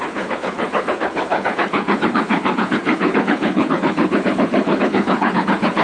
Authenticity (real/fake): fake